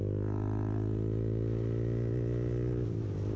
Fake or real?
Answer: real